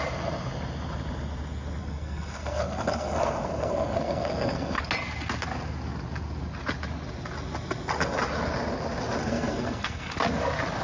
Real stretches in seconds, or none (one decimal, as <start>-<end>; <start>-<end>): 0.0-1.8; 4.8-9.2; 10.1-10.8